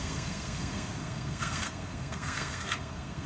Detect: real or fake fake